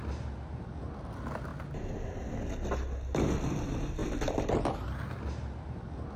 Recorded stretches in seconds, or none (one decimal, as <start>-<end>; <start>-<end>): 0.0-6.2